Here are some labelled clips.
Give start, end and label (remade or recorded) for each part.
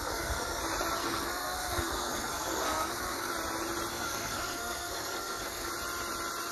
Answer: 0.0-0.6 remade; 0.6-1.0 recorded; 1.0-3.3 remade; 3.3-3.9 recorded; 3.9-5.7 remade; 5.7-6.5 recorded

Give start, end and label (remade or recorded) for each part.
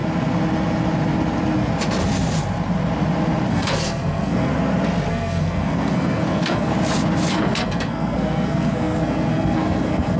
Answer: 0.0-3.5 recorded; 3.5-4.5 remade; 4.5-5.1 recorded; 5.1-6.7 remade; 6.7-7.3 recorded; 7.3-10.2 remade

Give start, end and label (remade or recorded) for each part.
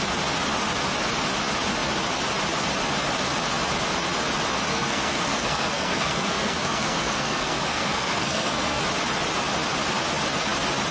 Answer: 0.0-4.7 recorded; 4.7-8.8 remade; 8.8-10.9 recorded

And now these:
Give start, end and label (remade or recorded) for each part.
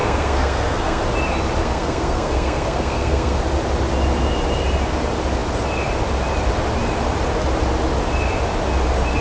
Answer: 0.0-1.0 remade; 1.0-1.6 recorded; 1.6-3.4 remade; 3.4-9.2 recorded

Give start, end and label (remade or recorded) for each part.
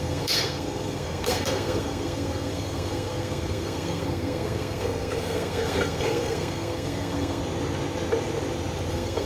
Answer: 0.0-7.4 remade; 7.4-8.9 recorded; 8.9-9.3 remade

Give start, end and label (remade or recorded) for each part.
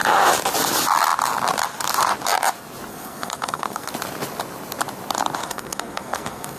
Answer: 0.0-2.9 recorded; 2.9-3.9 remade; 3.9-5.4 recorded; 5.4-6.6 remade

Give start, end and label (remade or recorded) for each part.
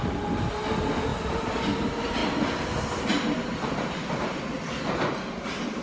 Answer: 0.0-5.8 recorded